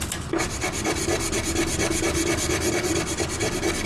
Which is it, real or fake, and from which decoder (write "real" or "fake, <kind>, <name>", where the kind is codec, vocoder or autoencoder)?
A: real